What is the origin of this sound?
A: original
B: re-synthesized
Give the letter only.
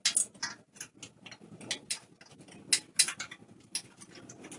A